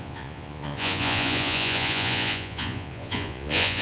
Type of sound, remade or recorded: remade